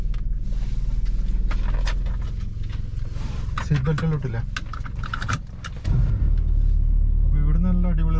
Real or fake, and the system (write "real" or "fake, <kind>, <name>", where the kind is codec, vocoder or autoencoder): real